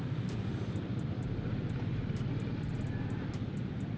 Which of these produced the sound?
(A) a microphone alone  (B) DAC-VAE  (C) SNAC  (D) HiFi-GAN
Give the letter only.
A